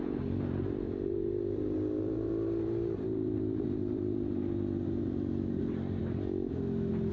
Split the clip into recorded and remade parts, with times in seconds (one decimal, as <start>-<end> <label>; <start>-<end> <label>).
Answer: 0.0-6.0 remade; 6.0-7.1 recorded

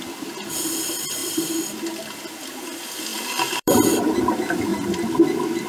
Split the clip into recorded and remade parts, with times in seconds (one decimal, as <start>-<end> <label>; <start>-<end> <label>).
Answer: 0.0-1.2 recorded; 1.2-2.2 remade; 2.2-3.1 recorded; 3.1-4.3 remade; 4.3-5.7 recorded

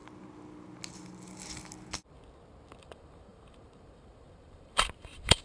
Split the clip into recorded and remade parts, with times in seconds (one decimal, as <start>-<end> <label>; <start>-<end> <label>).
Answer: 0.0-2.8 recorded; 2.8-5.4 remade

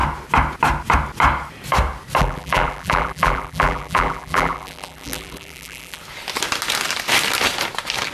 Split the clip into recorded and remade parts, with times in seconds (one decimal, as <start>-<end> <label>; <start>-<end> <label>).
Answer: 0.0-2.2 recorded; 2.2-6.0 remade; 6.0-8.1 recorded

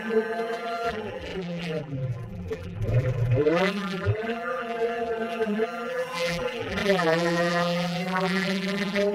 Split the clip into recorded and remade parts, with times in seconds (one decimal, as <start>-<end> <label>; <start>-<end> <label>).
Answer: 0.0-9.1 remade

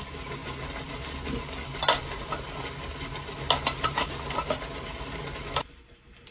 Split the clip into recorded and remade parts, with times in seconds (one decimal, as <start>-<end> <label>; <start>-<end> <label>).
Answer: 0.0-6.3 recorded

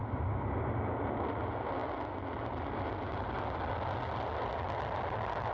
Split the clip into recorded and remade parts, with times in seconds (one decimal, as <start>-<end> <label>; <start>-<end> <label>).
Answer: 0.0-5.5 recorded

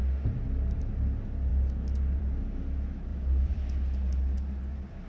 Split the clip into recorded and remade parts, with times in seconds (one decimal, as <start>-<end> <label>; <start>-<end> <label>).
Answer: 0.0-0.8 remade; 0.8-3.1 recorded; 3.1-3.7 remade; 3.7-5.1 recorded